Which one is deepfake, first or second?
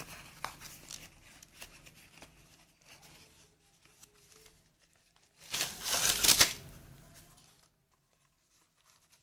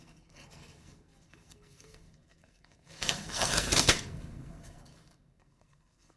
second